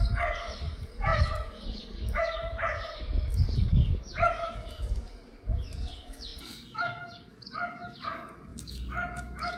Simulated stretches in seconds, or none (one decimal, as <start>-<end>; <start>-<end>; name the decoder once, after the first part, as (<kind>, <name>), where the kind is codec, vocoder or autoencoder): 0.0-9.6 (codec, DAC)